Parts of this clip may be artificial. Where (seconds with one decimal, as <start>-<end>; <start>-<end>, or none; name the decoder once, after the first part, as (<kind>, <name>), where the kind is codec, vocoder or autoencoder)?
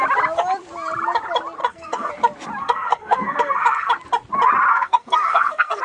1.6-2.1 (codec, SNAC); 2.6-3.9; 4.7-5.8